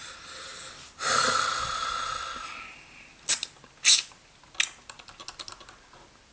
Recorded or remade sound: recorded